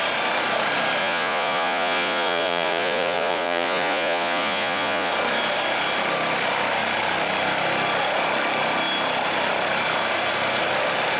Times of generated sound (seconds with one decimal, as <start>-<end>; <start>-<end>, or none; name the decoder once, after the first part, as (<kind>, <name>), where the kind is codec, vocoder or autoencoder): 1.0-5.1 (vocoder, Vocos)